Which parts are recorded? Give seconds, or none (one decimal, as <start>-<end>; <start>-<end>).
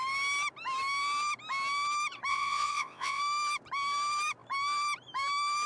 0.0-2.3; 3.2-5.7